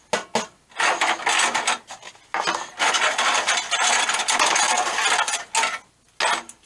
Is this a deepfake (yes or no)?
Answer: no